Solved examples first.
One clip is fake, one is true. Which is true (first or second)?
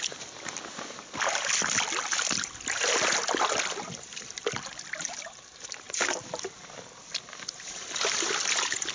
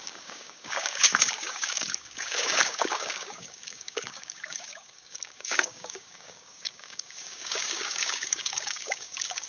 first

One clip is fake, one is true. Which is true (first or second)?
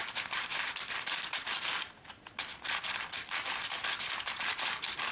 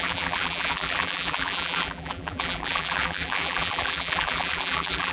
first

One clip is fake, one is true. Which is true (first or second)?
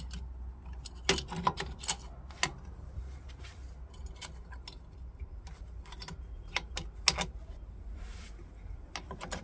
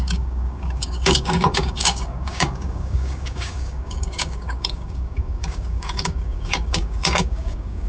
first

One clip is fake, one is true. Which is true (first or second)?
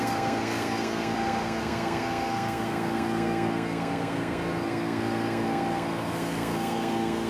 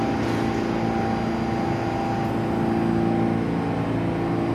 second